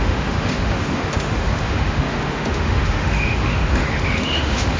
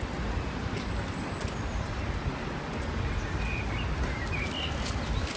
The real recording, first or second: second